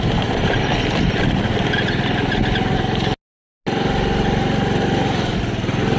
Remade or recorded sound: recorded